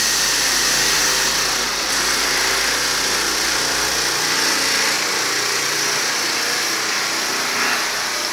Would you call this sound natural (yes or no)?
yes